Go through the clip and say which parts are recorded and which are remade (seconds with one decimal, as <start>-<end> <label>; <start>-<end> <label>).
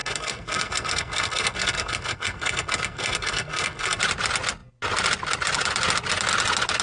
0.0-4.0 remade; 4.0-6.8 recorded